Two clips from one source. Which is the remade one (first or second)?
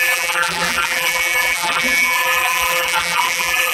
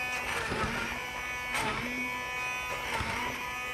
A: first